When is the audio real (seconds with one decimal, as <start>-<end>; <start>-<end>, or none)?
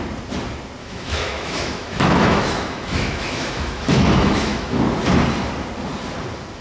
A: 0.0-0.8; 4.8-6.6